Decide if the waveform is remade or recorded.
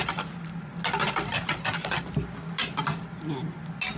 recorded